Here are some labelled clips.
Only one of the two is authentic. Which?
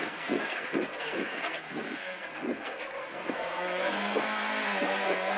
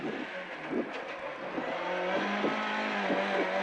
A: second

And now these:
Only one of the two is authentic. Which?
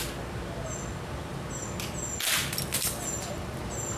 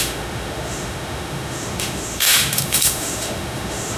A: first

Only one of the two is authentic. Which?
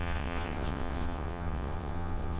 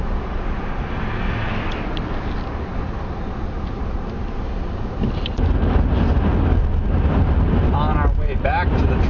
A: second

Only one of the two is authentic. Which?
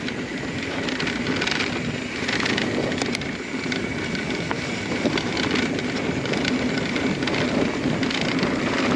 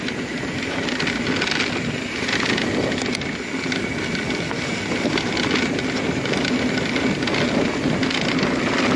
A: second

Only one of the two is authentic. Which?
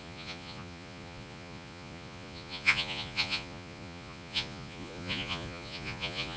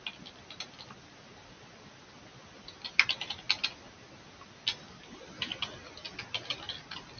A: second